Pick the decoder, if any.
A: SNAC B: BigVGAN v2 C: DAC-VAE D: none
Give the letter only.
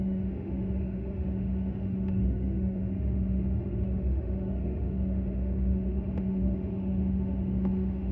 C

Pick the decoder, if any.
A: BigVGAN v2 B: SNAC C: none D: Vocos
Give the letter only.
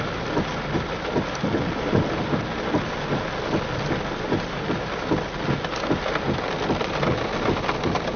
C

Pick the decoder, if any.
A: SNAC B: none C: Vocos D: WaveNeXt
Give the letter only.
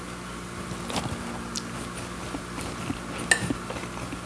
B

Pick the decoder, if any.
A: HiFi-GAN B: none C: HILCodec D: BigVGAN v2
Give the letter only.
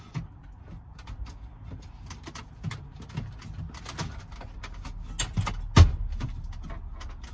B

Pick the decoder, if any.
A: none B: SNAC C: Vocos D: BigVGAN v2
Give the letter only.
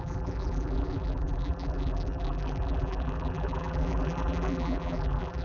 D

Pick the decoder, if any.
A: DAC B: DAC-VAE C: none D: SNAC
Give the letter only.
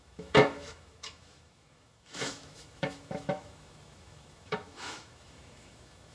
B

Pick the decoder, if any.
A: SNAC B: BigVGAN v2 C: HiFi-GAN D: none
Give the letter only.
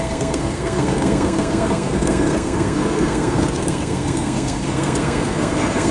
A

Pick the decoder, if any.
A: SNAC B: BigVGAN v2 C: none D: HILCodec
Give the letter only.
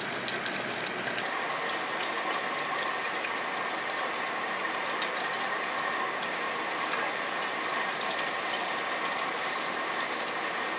C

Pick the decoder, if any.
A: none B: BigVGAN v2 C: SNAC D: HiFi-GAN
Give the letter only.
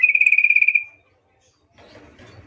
A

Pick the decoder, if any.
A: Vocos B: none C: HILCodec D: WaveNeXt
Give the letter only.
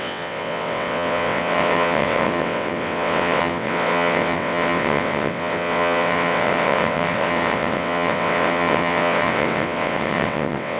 D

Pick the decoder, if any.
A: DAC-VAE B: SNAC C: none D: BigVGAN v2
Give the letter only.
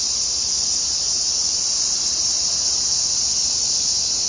C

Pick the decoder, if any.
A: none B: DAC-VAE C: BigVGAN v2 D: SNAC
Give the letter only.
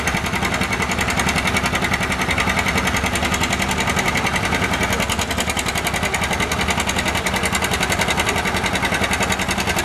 A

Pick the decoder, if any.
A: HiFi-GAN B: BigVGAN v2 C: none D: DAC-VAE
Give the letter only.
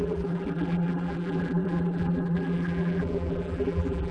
B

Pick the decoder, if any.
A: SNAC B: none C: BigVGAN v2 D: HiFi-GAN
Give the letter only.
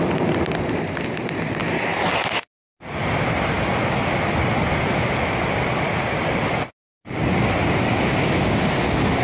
B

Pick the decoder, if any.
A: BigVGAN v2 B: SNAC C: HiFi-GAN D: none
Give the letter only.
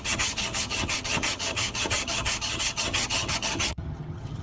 C